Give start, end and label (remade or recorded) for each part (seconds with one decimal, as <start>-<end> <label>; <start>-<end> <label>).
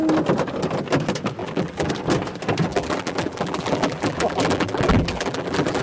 0.0-1.4 recorded; 1.4-1.9 remade; 1.9-2.7 recorded; 2.7-5.8 remade